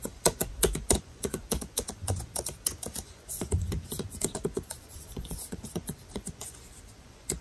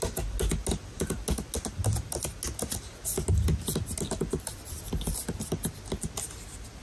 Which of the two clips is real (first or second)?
second